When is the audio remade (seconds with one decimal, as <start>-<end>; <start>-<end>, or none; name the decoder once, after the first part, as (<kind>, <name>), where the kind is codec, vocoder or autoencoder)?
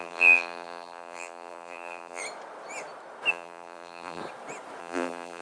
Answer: 0.0-2.2 (vocoder, BigVGAN v2); 3.3-4.2; 4.8-5.4